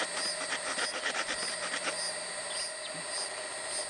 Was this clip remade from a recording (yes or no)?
no